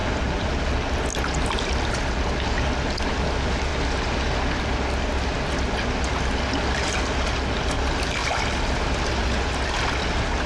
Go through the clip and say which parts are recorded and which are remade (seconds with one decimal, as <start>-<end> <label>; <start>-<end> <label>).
0.0-1.2 remade; 1.2-10.5 recorded